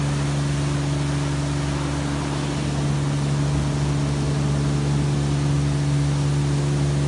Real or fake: real